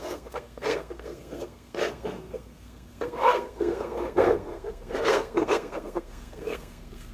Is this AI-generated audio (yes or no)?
yes